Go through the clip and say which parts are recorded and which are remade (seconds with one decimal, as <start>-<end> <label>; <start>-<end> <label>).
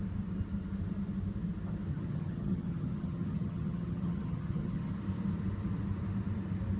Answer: 0.0-1.9 recorded; 1.9-4.9 remade; 4.9-6.8 recorded